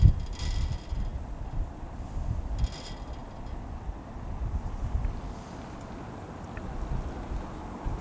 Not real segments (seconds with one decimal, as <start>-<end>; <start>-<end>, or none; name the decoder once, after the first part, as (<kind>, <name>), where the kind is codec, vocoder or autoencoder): none